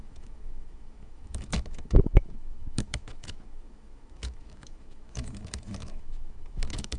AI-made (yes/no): yes